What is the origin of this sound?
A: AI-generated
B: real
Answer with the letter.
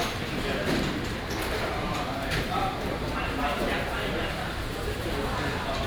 A